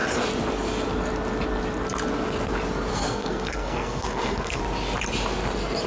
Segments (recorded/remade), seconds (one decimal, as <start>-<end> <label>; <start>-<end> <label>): 0.0-2.9 recorded; 2.9-4.6 remade; 4.6-5.9 recorded